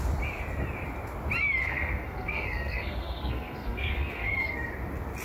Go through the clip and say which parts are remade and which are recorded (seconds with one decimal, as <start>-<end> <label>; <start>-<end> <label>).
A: 0.0-1.6 recorded; 1.6-4.7 remade; 4.7-5.2 recorded